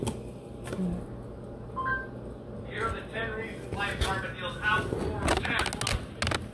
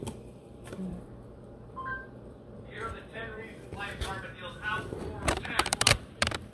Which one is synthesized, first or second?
second